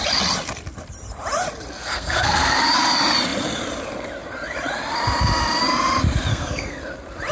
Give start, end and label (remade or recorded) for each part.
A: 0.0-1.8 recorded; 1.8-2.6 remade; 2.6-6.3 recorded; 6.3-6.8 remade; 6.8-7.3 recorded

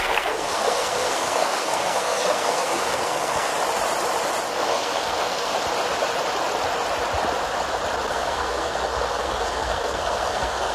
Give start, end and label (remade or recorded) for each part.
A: 0.0-3.5 remade; 3.5-4.5 recorded; 4.5-5.5 remade; 5.5-8.1 recorded; 8.1-10.7 remade